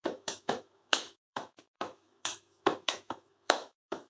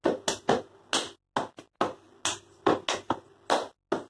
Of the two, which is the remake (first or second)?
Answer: first